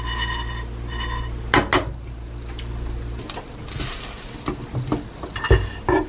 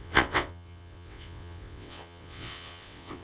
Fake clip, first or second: second